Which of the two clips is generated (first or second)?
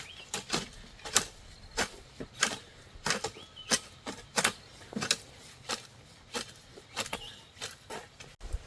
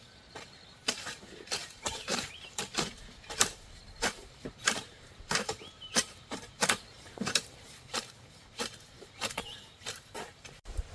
second